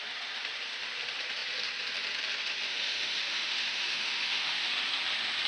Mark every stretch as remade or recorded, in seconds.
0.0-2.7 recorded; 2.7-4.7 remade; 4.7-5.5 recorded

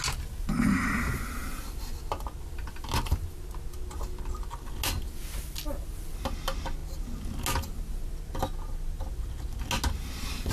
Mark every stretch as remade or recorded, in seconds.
0.0-10.5 recorded

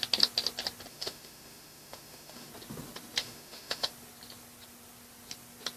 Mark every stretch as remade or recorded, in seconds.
0.0-0.9 recorded; 0.9-2.5 remade; 2.5-3.2 recorded; 3.2-3.9 remade; 3.9-5.8 recorded